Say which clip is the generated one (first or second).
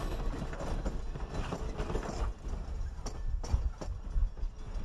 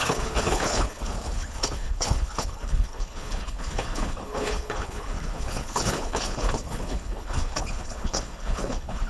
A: second